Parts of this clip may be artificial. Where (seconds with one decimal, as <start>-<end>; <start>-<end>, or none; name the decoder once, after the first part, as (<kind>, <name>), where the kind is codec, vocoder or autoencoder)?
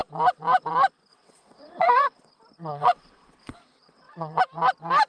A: 1.1-2.3 (vocoder, WaveNeXt); 2.7-4.4